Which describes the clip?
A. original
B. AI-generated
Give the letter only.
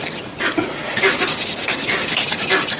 A